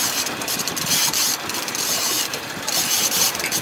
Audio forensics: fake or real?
fake